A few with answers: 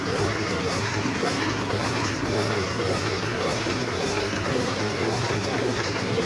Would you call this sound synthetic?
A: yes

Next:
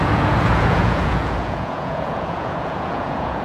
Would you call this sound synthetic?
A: yes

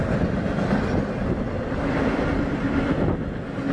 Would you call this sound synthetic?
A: no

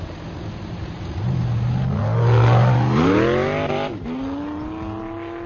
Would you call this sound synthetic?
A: no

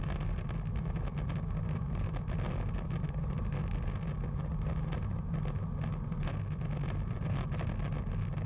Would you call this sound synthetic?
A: no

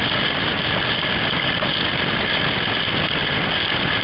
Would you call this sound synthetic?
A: no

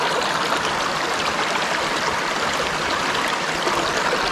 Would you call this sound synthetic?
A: no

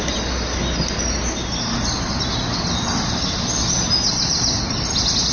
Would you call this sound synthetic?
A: no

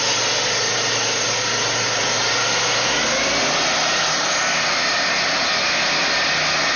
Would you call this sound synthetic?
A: no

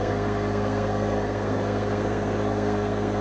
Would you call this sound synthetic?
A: yes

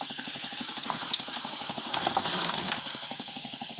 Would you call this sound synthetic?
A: yes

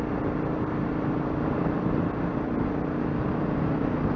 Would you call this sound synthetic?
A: no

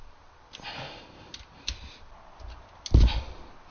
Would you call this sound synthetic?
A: no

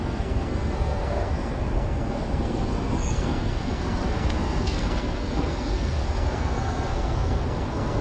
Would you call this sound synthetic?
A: yes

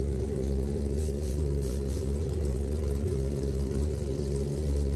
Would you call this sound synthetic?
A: yes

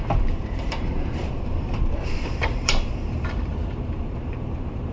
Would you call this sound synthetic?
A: yes